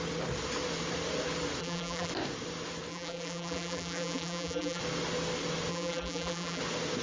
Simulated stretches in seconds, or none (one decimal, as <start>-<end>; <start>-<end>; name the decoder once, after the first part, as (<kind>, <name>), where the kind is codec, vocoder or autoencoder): 1.6-2.1 (vocoder, BigVGAN v2); 2.9-4.8; 5.7-6.6